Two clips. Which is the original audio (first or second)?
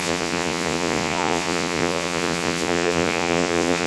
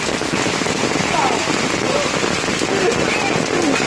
second